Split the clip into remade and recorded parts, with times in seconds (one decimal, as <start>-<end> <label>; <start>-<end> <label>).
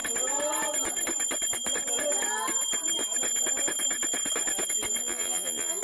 0.0-5.0 recorded; 5.0-5.8 remade